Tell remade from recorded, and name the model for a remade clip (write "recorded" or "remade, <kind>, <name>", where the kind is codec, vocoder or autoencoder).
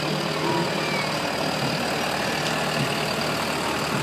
recorded